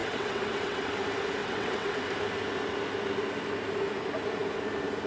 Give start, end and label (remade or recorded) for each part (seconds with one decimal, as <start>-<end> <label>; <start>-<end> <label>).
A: 0.0-0.9 remade; 0.9-1.4 recorded; 1.4-2.0 remade; 2.0-5.1 recorded